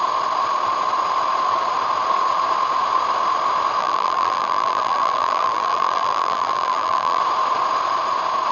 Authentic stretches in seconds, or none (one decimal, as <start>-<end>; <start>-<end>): 0.0-3.8; 7.2-8.5